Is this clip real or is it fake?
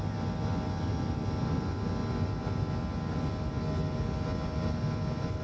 real